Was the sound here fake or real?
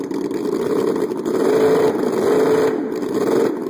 real